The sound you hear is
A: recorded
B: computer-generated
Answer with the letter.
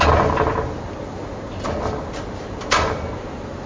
A